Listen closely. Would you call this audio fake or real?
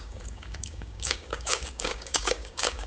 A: fake